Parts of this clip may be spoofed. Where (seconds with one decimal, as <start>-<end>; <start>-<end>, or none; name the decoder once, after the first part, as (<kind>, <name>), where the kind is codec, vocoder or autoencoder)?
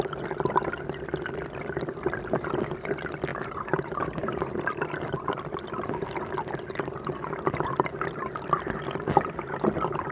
3.3-4.6 (vocoder, BigVGAN v2)